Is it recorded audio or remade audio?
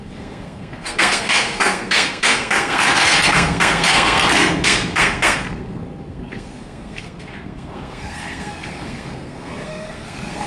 remade